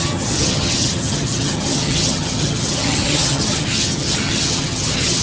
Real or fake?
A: fake